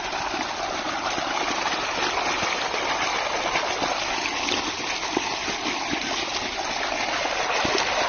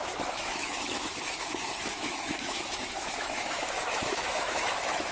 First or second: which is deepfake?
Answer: second